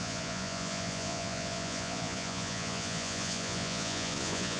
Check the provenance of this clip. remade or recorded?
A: remade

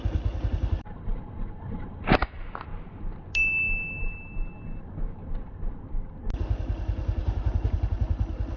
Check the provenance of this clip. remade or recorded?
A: recorded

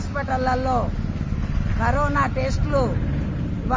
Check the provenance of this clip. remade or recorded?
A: recorded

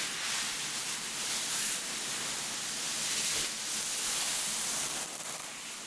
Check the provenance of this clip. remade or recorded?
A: recorded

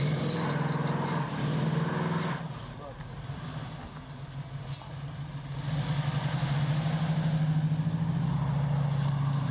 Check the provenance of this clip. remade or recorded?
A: recorded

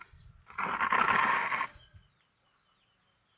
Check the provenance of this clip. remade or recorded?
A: recorded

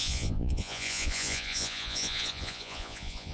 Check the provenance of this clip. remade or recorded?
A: remade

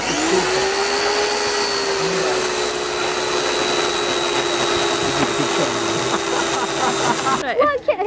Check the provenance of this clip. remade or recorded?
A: recorded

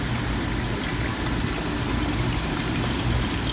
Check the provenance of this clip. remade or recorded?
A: recorded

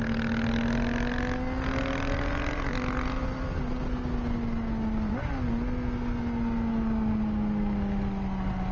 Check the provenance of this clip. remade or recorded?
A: recorded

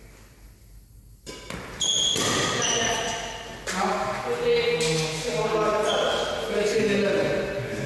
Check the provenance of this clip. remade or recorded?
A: recorded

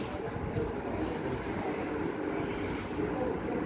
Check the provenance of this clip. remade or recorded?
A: recorded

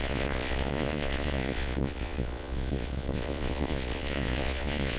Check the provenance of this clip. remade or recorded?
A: remade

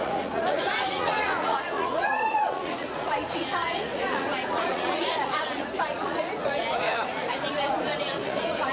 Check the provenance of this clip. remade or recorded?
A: remade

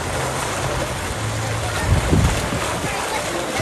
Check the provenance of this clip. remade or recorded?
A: recorded